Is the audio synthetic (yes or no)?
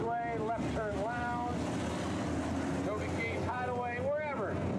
no